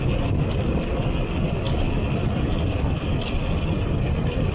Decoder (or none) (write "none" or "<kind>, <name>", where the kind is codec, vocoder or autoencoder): none